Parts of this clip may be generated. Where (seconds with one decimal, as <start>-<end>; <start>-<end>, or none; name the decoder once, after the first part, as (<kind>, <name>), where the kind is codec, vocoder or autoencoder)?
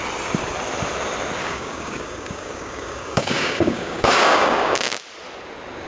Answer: 1.4-4.9 (codec, DAC)